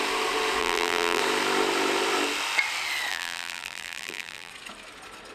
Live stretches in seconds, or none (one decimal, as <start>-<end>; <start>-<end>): 0.0-0.6; 1.2-3.1; 4.5-5.3